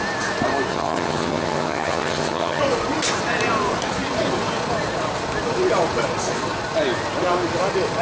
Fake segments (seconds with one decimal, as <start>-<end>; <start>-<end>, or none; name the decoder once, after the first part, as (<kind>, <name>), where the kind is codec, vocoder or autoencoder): 0.7-2.6 (vocoder, HiFi-GAN)